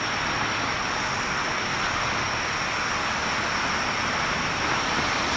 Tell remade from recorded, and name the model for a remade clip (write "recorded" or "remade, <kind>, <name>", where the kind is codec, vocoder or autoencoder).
recorded